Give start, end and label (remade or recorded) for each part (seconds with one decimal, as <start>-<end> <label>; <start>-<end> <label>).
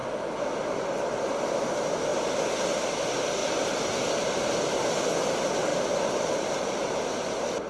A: 0.0-7.7 recorded